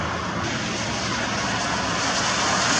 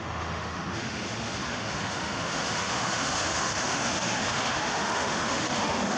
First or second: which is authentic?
first